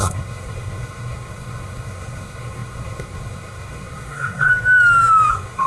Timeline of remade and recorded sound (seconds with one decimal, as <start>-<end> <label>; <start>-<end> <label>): 0.0-4.5 remade; 4.5-5.3 recorded; 5.3-5.7 remade